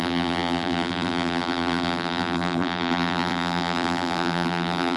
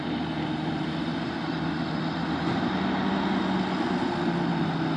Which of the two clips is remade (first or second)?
first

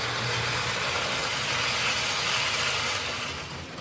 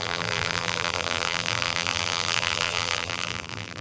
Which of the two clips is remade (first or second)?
second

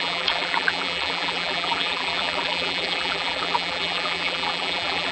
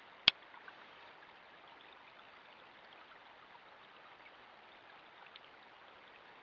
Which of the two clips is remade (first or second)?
first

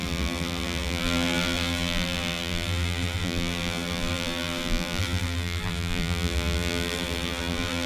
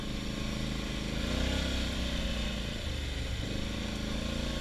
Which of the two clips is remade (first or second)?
first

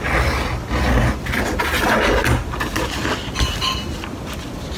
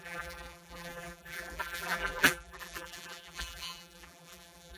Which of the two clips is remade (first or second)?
second